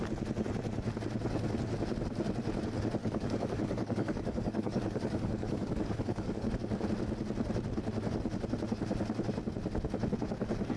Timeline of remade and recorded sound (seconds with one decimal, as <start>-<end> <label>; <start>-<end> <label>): 0.0-3.0 recorded; 3.0-6.5 remade; 6.5-10.8 recorded